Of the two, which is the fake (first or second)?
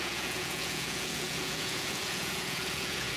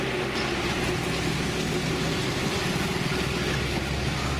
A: first